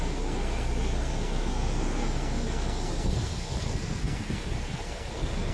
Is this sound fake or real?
fake